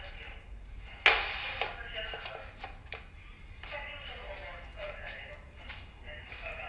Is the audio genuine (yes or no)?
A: yes